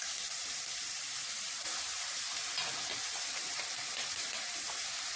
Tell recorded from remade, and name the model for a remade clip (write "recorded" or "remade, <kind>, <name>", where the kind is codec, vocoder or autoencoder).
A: remade, vocoder, BigVGAN v2